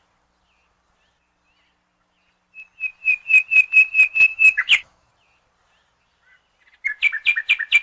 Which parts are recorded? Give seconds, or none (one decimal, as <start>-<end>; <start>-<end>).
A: 0.0-4.3; 5.1-7.8